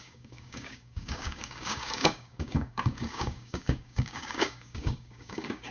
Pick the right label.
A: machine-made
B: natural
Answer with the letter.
A